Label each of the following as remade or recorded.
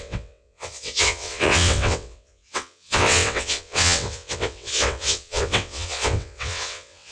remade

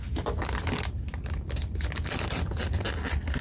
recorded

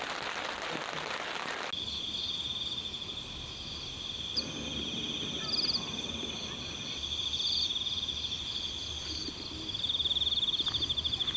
recorded